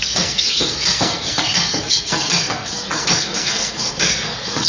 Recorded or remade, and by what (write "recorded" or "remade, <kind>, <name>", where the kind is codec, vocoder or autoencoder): remade, codec, SNAC